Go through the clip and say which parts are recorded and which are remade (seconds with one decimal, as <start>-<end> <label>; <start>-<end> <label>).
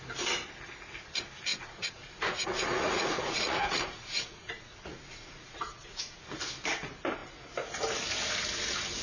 0.0-1.5 recorded; 1.5-6.2 remade; 6.2-9.0 recorded